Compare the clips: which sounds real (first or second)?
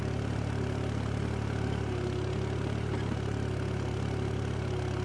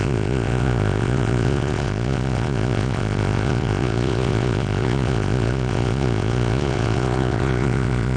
first